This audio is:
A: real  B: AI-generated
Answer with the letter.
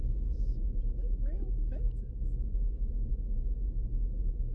B